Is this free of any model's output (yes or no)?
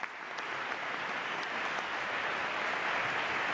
yes